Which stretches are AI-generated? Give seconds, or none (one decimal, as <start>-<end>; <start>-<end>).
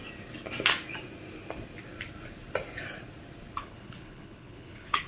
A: 3.6-5.1